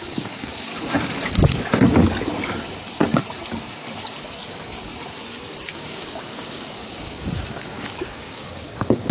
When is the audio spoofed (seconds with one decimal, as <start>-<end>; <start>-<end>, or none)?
0.0-0.7; 4.5-4.9; 5.7-9.1